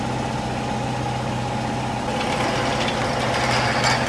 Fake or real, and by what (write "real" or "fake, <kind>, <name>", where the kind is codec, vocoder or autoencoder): real